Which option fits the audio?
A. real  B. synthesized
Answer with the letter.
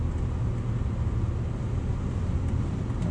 A